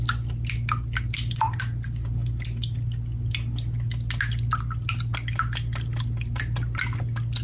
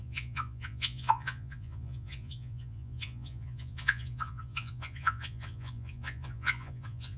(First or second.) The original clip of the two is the first